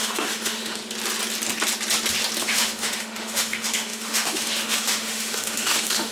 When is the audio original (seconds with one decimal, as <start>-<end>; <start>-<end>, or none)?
0.8-2.4